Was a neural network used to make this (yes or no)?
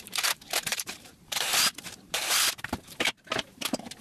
yes